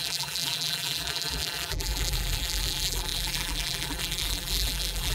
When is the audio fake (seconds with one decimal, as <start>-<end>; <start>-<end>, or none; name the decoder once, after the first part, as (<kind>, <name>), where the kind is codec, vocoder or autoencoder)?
0.0-5.1 (vocoder, BigVGAN v2)